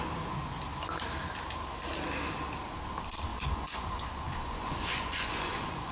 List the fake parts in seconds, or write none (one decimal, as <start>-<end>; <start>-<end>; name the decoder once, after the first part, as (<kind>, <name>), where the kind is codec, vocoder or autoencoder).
3.3-5.9 (vocoder, Vocos)